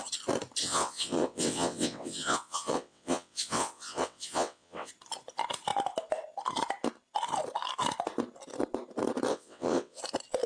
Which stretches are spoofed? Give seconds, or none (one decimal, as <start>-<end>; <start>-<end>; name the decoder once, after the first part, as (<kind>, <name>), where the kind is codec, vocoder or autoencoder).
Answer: 0.6-4.9 (vocoder, WaveNeXt); 9.3-10.0